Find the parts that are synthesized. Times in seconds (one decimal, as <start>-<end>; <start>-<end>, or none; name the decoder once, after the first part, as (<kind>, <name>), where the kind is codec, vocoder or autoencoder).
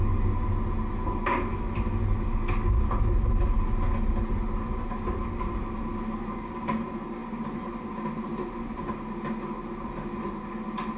none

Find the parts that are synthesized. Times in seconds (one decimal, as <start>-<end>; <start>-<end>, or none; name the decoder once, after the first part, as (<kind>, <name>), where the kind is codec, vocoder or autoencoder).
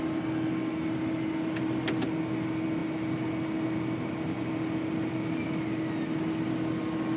none